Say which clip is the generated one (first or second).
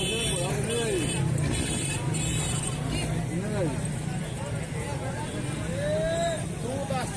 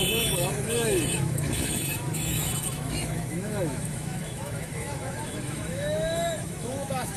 second